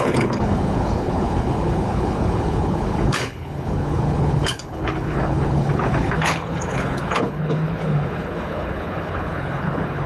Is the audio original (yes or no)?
no